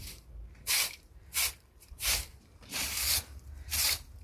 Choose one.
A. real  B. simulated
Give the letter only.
B